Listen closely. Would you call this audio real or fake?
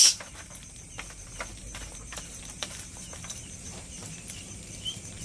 fake